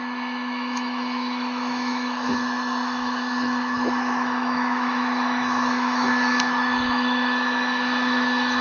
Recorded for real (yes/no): no